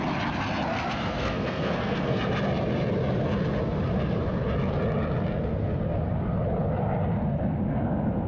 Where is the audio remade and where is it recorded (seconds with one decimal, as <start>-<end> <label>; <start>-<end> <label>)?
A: 0.0-0.7 recorded; 0.7-2.2 remade; 2.2-8.3 recorded